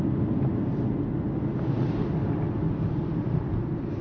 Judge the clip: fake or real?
real